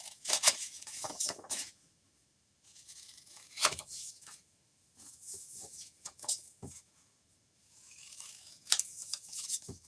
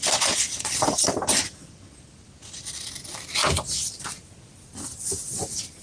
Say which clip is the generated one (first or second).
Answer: first